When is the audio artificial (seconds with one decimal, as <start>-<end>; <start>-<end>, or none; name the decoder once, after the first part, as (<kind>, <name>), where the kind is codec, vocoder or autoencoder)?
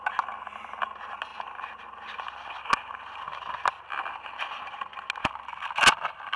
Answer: none